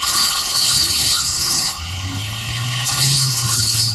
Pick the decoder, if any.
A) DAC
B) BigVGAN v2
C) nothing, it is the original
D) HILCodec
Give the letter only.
D